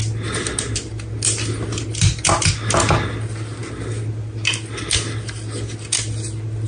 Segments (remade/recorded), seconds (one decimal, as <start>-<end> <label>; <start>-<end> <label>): 0.0-6.7 recorded